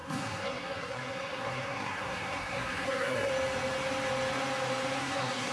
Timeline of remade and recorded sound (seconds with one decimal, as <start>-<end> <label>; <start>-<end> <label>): 0.0-3.3 remade; 3.3-5.0 recorded; 5.0-5.5 remade